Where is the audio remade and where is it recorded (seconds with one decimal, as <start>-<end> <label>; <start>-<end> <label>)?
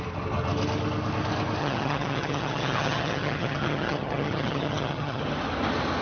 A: 0.0-1.6 recorded; 1.6-5.2 remade; 5.2-6.0 recorded